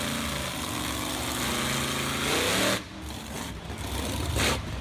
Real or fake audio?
real